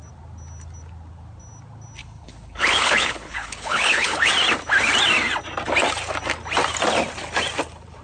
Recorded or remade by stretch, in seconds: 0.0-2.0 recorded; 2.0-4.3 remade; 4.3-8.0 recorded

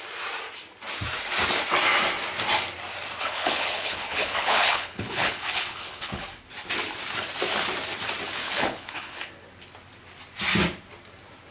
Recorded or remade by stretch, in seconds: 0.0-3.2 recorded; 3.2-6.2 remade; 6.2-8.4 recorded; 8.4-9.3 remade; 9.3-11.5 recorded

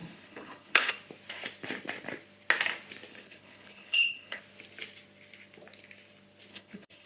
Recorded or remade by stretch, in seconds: 0.0-0.9 remade; 0.9-3.1 recorded; 3.1-4.4 remade; 4.4-6.5 recorded; 6.5-7.1 remade

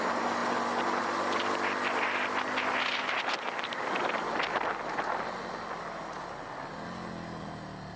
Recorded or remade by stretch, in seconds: 0.0-8.0 recorded

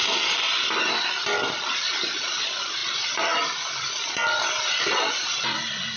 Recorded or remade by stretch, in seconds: 0.0-6.0 recorded